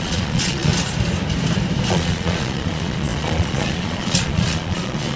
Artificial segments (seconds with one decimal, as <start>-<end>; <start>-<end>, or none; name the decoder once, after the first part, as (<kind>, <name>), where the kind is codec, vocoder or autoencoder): 0.0-0.7 (vocoder, Vocos); 1.9-5.2